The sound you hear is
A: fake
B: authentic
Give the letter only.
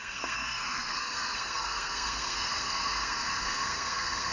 A